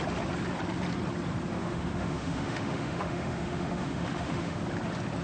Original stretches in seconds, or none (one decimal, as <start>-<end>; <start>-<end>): 0.0-1.5; 4.6-5.2